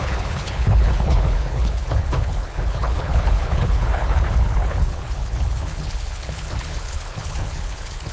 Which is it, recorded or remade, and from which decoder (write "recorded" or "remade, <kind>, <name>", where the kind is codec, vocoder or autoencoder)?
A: remade, codec, HILCodec